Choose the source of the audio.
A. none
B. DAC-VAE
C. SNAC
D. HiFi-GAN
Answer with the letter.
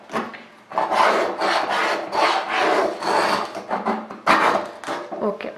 A